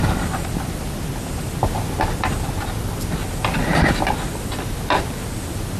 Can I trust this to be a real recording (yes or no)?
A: yes